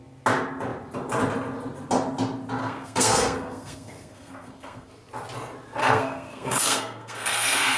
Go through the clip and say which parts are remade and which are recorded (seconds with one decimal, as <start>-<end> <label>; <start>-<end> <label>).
0.0-2.6 recorded; 2.6-4.9 remade; 4.9-5.8 recorded; 5.8-7.8 remade